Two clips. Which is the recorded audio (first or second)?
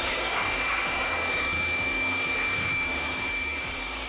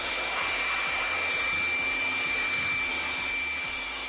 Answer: second